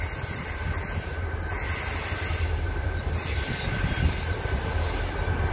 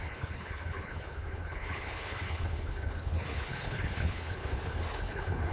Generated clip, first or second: second